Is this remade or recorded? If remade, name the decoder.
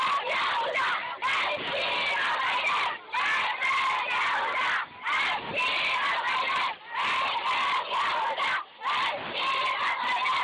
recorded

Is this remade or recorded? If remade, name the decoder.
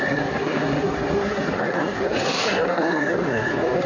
remade, codec, SNAC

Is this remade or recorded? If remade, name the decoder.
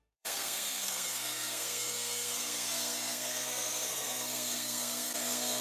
remade, codec, SNAC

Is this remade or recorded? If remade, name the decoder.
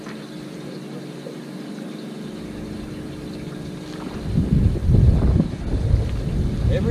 recorded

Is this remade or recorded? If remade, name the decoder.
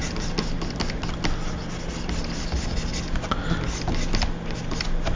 recorded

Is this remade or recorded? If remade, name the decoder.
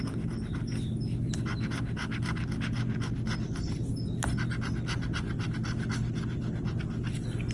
recorded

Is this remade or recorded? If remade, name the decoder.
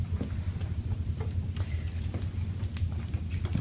recorded